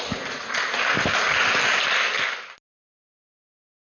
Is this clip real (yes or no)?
yes